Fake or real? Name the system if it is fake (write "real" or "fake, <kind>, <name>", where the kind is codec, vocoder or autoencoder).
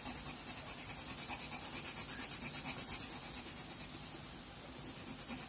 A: real